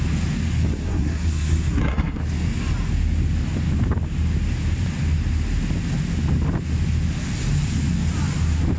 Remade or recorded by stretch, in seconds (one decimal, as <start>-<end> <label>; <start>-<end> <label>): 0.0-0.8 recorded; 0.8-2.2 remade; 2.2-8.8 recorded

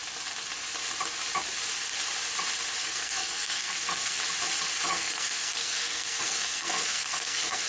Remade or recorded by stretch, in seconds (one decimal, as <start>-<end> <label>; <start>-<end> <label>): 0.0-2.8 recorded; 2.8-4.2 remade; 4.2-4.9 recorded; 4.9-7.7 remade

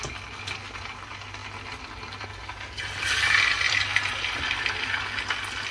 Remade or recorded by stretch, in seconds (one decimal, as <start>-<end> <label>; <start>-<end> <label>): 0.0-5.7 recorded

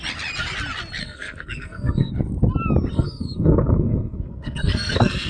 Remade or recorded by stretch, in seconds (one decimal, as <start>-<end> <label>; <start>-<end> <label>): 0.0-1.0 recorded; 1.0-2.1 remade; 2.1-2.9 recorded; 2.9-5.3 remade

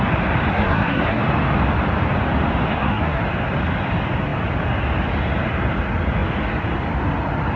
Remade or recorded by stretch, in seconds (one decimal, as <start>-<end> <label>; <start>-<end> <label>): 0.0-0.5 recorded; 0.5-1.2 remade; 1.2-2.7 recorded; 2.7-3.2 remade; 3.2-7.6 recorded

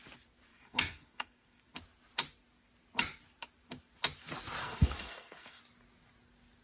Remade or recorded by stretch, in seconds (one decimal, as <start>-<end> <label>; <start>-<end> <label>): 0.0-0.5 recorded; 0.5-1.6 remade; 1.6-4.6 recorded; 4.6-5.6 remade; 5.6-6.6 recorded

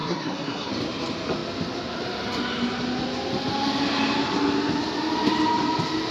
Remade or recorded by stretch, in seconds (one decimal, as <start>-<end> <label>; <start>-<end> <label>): 0.0-0.7 remade; 0.7-6.1 recorded

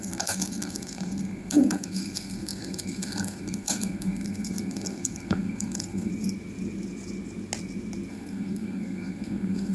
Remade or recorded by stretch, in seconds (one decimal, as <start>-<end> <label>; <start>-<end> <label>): 0.0-6.1 remade; 6.1-8.1 recorded; 8.1-9.7 remade